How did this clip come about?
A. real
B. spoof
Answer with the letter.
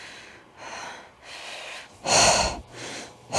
A